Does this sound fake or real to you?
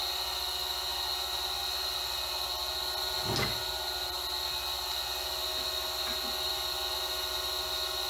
real